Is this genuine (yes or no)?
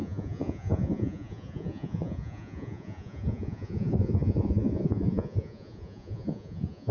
no